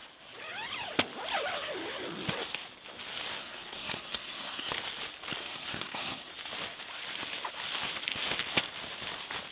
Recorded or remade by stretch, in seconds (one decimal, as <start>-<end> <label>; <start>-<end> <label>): 0.0-3.4 recorded; 3.4-4.7 remade; 4.7-5.4 recorded; 5.4-6.3 remade; 6.3-9.5 recorded